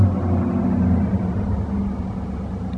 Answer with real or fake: real